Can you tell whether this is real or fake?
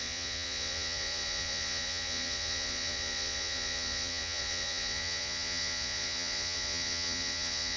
fake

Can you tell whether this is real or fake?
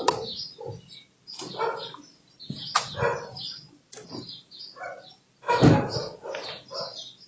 real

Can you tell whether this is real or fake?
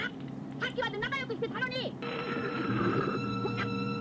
fake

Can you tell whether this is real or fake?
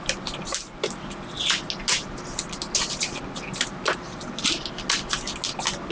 real